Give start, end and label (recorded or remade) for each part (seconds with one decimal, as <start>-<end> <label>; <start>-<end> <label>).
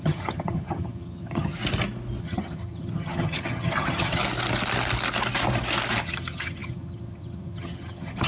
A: 0.0-1.6 remade; 1.6-2.2 recorded; 2.2-4.2 remade; 4.2-6.0 recorded; 6.0-8.3 remade